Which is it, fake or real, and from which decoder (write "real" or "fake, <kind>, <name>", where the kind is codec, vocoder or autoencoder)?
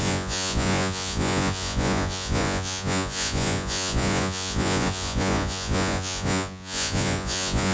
fake, vocoder, Vocos